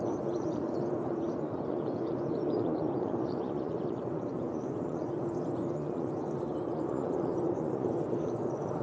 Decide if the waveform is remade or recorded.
remade